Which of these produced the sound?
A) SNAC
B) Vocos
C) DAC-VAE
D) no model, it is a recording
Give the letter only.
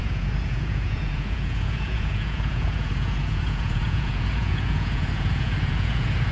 B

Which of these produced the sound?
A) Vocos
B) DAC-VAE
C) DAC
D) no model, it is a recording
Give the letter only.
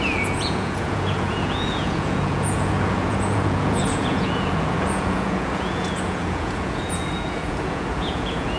A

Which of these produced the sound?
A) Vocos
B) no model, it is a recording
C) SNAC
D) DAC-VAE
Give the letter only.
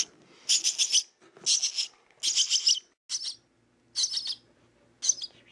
B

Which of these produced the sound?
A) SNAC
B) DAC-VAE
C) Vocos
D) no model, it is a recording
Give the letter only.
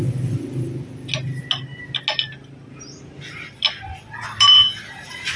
D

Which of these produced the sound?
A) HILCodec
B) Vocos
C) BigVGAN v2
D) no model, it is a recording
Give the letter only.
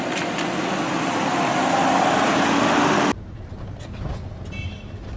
D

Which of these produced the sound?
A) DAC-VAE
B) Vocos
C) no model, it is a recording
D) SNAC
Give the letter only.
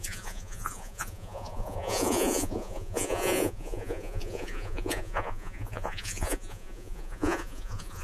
B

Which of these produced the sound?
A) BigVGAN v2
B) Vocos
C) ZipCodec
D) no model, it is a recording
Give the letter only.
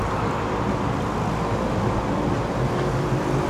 D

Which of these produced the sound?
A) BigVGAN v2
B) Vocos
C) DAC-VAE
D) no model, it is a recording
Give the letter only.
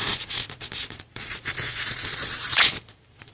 B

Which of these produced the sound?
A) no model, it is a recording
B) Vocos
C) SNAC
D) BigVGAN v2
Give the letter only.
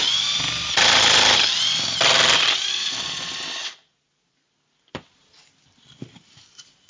A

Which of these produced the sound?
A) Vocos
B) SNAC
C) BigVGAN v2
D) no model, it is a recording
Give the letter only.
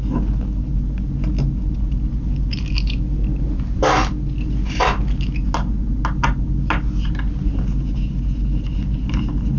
D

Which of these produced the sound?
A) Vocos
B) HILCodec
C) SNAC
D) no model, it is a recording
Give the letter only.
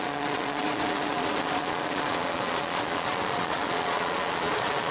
A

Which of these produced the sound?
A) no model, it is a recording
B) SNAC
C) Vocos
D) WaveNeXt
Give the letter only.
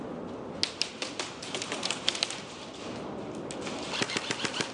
A